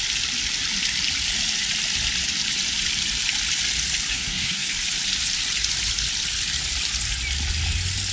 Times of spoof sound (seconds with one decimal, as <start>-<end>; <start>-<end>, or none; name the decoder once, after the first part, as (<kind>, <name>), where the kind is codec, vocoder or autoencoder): 4.1-4.7 (codec, SNAC)